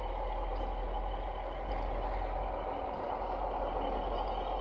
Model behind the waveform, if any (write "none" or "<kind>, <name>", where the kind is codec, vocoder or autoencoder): none